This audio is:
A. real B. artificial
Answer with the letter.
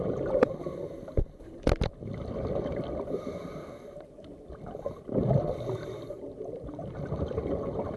A